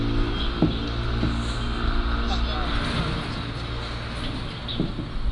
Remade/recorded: recorded